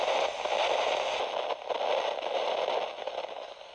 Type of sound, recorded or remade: recorded